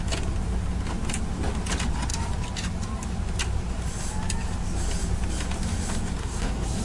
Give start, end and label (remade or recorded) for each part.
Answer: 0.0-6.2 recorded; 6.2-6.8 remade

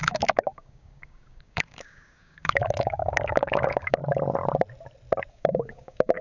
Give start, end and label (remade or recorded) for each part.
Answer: 0.0-4.0 remade; 4.0-5.3 recorded; 5.3-6.2 remade

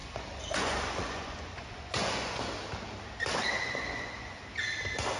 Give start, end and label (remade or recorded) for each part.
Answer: 0.0-2.4 remade; 2.4-3.6 recorded; 3.6-4.4 remade; 4.4-5.2 recorded